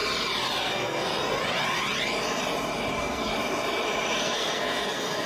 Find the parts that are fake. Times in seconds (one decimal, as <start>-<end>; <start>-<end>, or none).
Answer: 0.6-1.1; 2.9-3.3; 4.2-5.3

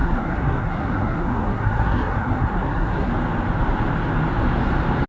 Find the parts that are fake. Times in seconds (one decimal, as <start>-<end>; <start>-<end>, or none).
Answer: 0.0-3.1